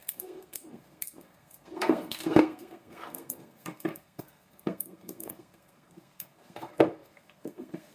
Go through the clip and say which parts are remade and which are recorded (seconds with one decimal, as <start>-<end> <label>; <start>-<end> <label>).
0.0-7.9 remade